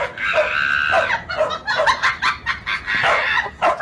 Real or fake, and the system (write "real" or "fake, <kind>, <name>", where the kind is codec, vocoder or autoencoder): real